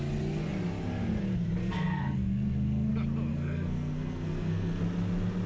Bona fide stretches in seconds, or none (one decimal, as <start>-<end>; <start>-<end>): 0.0-1.6; 2.9-3.3; 4.8-5.5

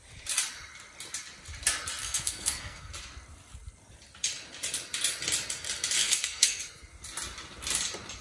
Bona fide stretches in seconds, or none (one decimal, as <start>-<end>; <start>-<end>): 0.0-2.0; 2.9-6.0; 6.6-8.2

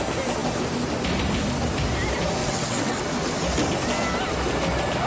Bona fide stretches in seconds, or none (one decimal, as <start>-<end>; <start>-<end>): 0.0-2.4; 3.0-5.1

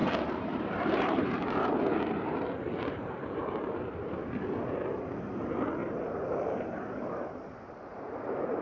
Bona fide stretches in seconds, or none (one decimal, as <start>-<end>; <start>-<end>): 3.6-5.8; 6.7-7.9